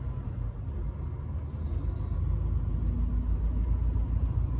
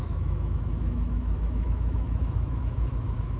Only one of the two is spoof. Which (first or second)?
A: second